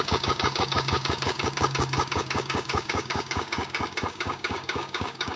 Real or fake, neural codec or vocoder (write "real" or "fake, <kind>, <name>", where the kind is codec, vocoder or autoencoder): fake, codec, DAC